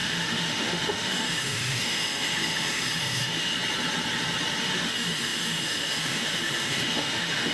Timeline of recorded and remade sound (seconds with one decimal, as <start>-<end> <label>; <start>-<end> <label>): 0.0-3.5 remade; 3.5-4.6 recorded; 4.6-7.5 remade